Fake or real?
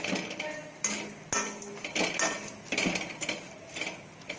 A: real